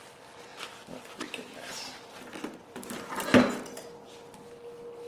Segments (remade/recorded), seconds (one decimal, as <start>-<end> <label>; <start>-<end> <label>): 0.0-5.1 recorded